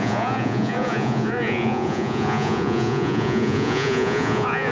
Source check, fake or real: fake